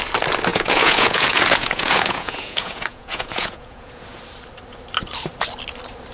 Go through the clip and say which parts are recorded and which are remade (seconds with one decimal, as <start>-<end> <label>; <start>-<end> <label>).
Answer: 0.0-0.5 recorded; 0.5-4.2 remade; 4.2-6.1 recorded